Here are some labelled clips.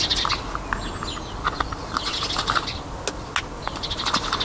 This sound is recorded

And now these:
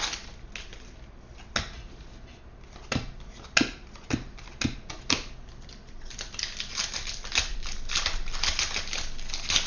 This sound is recorded